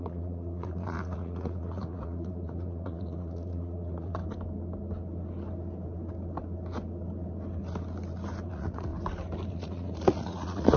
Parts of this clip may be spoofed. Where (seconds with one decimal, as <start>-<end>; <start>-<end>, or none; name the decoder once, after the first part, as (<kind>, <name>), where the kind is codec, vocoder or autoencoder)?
0.0-4.2 (vocoder, Vocos); 8.5-8.9; 9.5-10.8